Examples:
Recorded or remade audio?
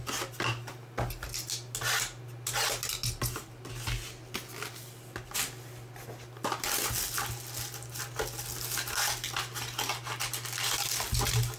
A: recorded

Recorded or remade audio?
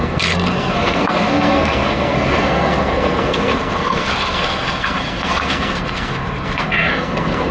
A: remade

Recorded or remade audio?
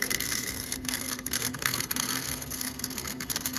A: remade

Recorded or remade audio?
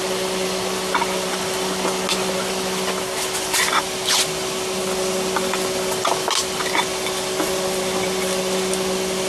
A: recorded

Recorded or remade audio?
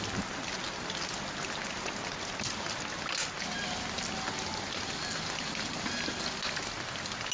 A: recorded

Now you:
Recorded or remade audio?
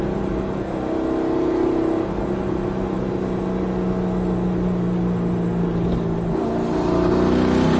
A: recorded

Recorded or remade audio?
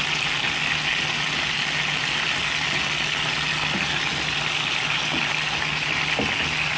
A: recorded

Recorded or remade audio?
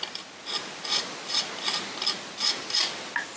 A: recorded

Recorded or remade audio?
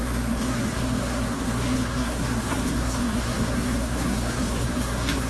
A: remade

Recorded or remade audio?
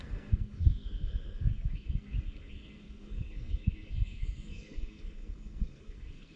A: remade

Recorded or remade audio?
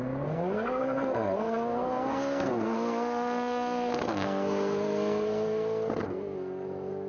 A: remade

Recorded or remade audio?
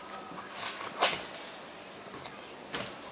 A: recorded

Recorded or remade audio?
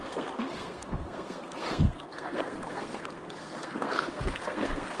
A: remade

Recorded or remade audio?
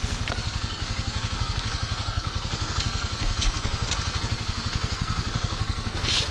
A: remade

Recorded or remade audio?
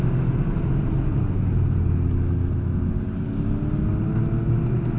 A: recorded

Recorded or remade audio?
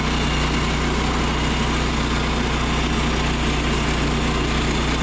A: recorded